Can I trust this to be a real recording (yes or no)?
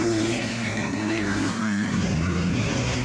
no